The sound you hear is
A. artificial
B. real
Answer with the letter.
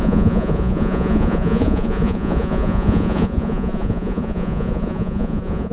A